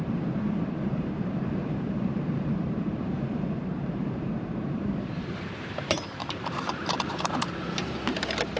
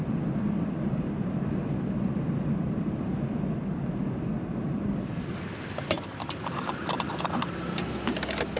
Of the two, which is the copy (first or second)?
first